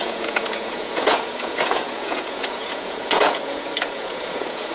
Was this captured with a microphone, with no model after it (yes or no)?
no